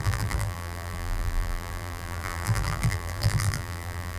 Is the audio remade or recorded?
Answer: remade